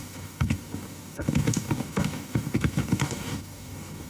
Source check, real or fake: fake